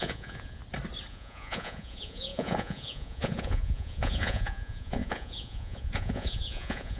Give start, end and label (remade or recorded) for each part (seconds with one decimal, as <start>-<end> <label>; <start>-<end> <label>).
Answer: 0.0-0.6 remade; 0.6-1.1 recorded; 1.1-7.0 remade